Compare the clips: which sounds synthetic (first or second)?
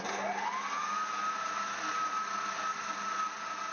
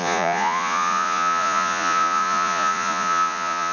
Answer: second